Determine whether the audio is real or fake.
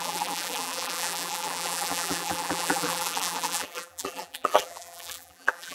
fake